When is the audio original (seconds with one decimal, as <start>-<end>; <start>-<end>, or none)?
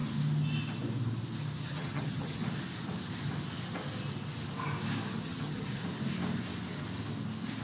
0.0-1.6; 2.4-5.2; 5.8-7.6